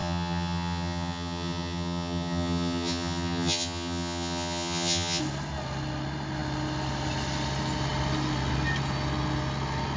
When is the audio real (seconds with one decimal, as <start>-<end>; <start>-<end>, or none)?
5.2-10.0